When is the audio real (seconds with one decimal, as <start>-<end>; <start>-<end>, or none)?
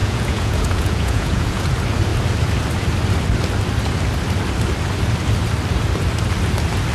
1.7-6.9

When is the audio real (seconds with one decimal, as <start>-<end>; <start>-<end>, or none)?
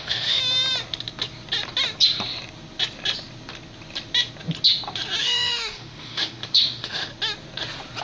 0.4-5.2; 7.1-8.0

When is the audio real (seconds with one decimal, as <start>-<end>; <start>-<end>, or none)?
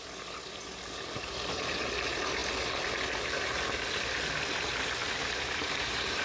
0.0-5.0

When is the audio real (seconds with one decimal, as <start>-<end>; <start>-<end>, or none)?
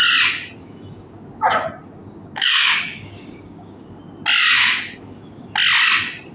0.0-2.0; 3.9-6.3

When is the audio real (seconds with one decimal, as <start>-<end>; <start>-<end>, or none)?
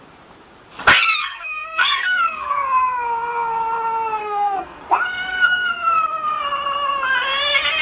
0.0-1.2; 2.5-4.2; 4.8-5.3; 6.3-7.8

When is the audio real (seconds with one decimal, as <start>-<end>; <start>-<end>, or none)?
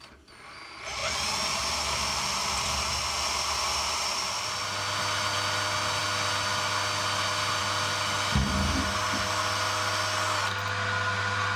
0.0-11.6